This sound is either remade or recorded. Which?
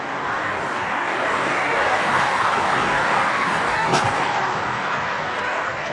remade